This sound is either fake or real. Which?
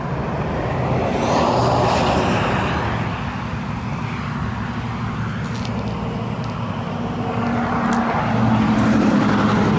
real